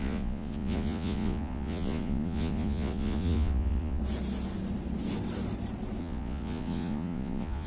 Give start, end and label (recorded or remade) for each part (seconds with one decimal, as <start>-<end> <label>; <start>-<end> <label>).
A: 0.0-4.0 remade; 4.0-6.0 recorded; 6.0-7.7 remade